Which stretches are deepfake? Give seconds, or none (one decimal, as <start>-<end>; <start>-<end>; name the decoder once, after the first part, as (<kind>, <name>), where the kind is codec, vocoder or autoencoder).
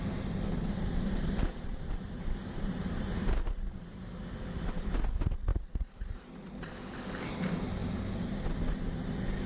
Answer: 1.7-4.2 (vocoder, BigVGAN v2); 7.8-8.4